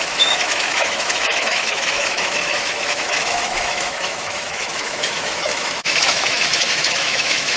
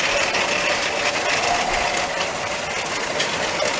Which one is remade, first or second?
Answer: first